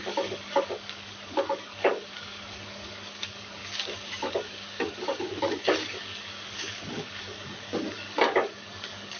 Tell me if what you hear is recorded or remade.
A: remade